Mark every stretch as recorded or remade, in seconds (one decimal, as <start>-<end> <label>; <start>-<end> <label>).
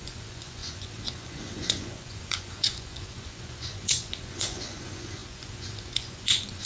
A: 0.0-6.7 remade